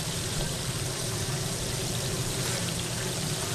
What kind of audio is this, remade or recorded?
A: remade